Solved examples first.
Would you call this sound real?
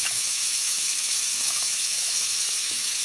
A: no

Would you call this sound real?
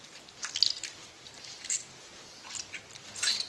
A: yes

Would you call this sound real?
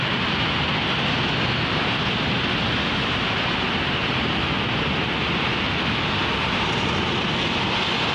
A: yes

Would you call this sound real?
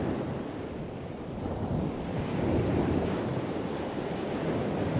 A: yes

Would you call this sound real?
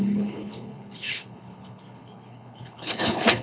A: no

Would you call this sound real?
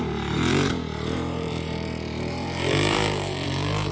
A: no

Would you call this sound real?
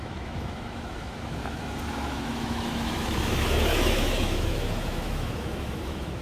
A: no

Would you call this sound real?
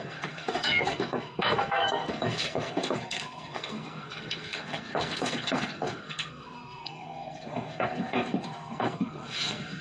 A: no